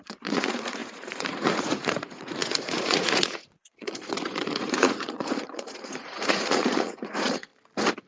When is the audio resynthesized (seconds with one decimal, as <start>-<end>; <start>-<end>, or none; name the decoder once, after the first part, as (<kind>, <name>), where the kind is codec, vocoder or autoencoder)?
0.0-7.5 (vocoder, Vocos)